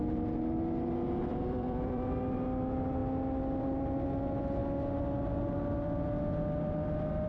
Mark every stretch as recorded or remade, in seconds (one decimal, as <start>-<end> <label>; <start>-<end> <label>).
0.0-1.3 recorded; 1.3-2.2 remade; 2.2-7.3 recorded